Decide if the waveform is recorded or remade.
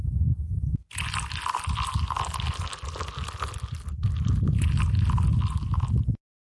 recorded